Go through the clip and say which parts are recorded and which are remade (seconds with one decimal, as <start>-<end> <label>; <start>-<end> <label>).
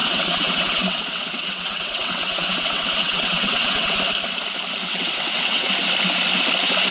0.0-4.0 remade; 4.0-4.8 recorded; 4.8-5.7 remade; 5.7-6.9 recorded